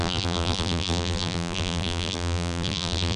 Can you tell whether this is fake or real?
fake